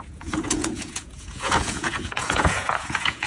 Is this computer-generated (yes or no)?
yes